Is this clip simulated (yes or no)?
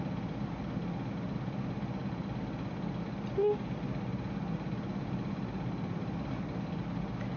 no